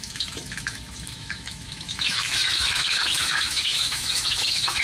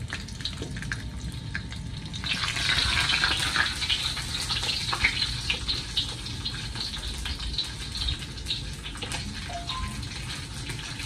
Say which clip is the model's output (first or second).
first